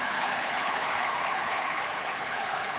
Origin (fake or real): fake